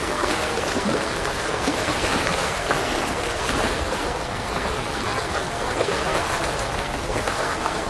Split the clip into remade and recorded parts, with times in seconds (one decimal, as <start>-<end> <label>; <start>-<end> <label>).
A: 0.0-7.9 remade